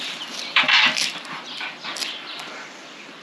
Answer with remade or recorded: remade